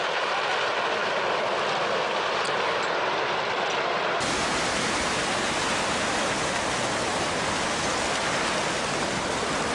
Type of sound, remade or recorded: recorded